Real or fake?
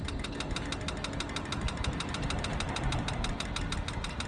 real